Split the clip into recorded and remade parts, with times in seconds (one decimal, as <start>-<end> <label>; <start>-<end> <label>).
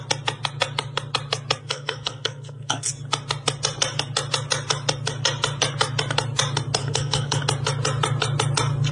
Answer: 0.0-1.6 recorded; 1.6-2.9 remade; 2.9-6.8 recorded; 6.8-7.4 remade; 7.4-8.9 recorded